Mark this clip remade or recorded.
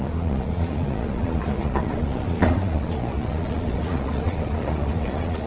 remade